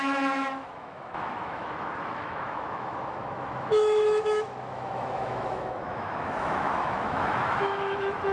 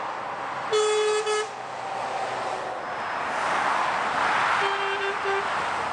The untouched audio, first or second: second